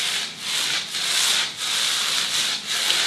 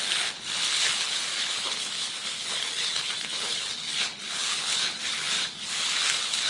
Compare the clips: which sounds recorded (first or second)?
first